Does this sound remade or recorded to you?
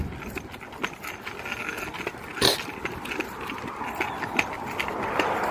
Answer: recorded